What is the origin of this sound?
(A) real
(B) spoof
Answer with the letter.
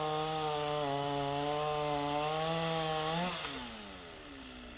A